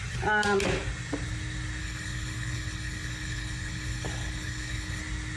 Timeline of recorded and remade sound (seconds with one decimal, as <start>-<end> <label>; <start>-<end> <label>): 0.0-1.8 recorded; 1.8-5.0 remade; 5.0-5.4 recorded